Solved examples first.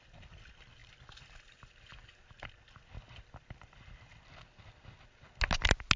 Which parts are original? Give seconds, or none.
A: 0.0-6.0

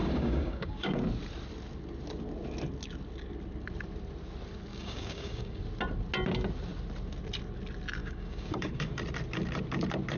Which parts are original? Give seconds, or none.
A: 1.0-4.7; 5.6-8.0; 9.0-10.2

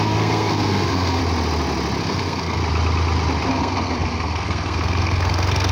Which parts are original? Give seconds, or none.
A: 1.2-2.0; 2.6-3.5

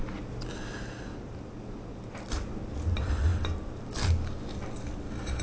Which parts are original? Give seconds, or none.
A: 0.0-1.1; 1.9-5.4

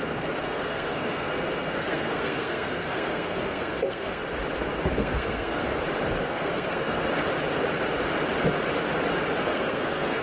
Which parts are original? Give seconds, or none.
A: 4.2-4.9; 5.7-6.2; 7.0-9.4

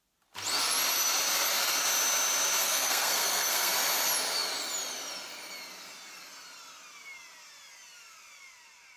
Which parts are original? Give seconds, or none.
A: 0.0-2.6; 3.7-9.0

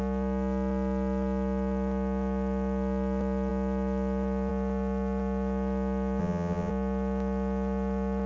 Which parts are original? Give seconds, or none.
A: 0.0-6.2; 6.7-8.3

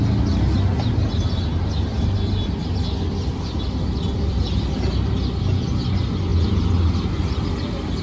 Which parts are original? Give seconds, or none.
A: 0.0-1.1; 1.6-8.0